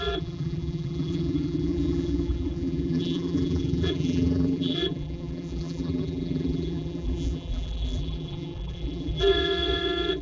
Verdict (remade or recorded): remade